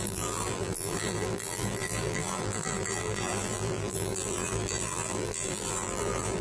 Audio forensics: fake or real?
fake